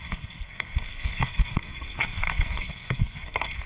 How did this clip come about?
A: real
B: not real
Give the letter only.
B